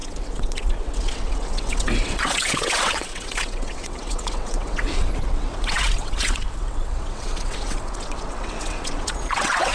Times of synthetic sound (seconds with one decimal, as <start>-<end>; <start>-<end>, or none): 0.0-9.7